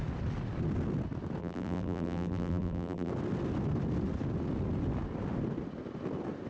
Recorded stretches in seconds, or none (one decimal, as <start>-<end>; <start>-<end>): 0.0-1.4; 3.1-6.5